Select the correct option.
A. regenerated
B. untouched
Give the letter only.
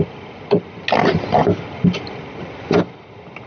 B